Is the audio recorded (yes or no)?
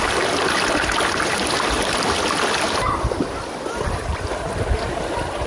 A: yes